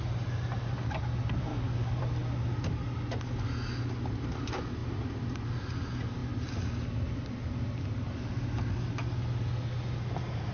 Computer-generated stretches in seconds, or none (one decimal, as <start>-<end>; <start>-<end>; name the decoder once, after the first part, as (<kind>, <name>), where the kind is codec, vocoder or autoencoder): 1.5-2.0 (codec, DAC)